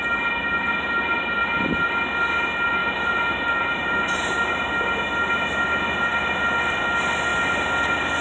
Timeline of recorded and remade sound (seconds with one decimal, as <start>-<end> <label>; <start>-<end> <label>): 0.0-2.8 recorded; 2.8-4.7 remade; 4.7-8.2 recorded